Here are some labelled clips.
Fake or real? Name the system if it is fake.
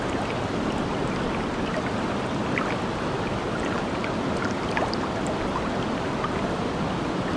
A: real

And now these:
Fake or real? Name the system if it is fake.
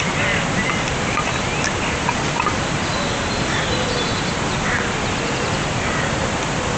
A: real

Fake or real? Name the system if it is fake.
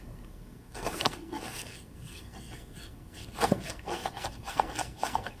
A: fake, codec, SNAC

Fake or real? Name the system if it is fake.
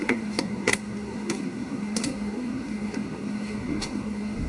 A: fake, codec, SNAC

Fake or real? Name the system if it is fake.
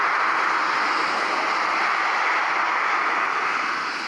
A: real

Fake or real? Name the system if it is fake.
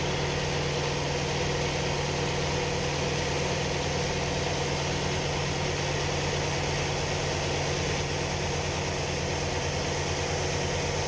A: real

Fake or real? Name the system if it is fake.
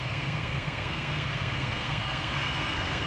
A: fake, codec, SNAC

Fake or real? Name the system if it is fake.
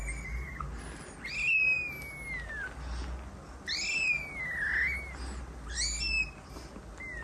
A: real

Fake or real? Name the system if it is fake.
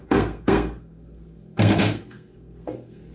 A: fake, codec, SNAC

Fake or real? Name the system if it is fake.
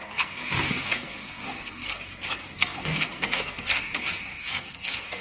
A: fake, codec, SNAC